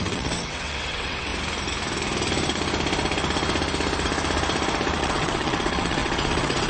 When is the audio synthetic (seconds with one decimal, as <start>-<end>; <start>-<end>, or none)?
0.0-1.3; 5.0-6.7